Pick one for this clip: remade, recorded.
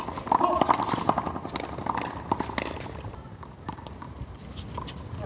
recorded